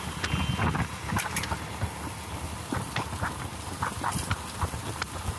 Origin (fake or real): real